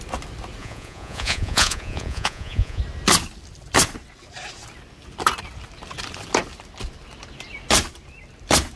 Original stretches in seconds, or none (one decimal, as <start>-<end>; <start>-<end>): 0.0-0.6; 2.8-8.8